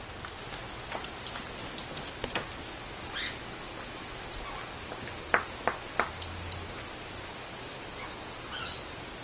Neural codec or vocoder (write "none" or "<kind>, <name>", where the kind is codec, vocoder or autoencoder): none